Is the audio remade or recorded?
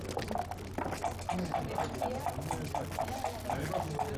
recorded